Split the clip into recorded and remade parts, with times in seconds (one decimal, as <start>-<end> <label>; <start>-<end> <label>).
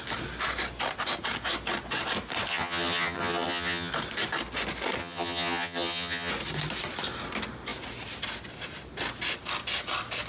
0.0-2.5 recorded; 2.5-3.9 remade; 3.9-5.0 recorded; 5.0-6.3 remade; 6.3-10.3 recorded